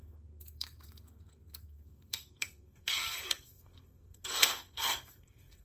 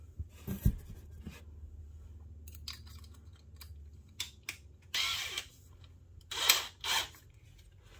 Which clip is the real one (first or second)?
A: second